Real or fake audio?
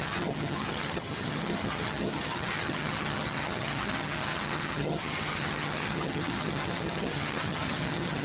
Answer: fake